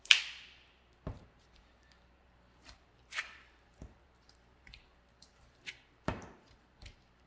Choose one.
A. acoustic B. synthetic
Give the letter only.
B